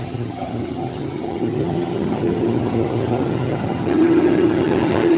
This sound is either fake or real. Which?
fake